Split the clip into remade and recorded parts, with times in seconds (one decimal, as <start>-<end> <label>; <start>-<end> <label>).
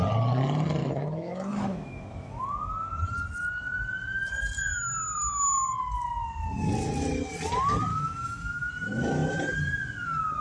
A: 0.0-0.8 recorded; 0.8-2.4 remade; 2.4-7.9 recorded; 7.9-8.7 remade; 8.7-10.4 recorded